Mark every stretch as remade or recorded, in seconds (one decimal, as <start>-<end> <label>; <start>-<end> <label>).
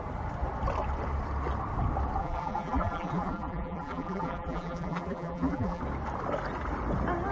0.0-2.2 recorded; 2.2-5.8 remade; 5.8-7.3 recorded